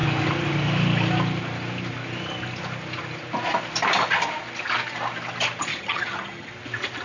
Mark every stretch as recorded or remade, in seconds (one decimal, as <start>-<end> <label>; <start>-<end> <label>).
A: 0.0-5.7 recorded; 5.7-6.5 remade; 6.5-7.0 recorded